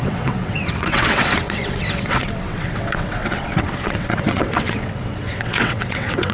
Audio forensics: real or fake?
fake